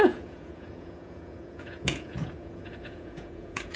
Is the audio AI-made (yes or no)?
yes